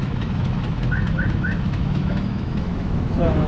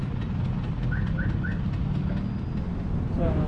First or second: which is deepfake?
first